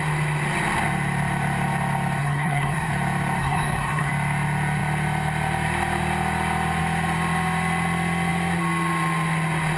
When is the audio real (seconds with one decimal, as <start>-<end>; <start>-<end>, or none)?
0.0-2.2; 2.9-3.4; 4.1-9.8